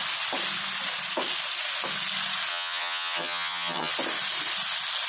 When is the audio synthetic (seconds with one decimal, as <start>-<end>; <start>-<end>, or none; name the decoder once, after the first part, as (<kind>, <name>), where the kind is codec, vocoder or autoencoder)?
2.5-3.9 (vocoder, HiFi-GAN)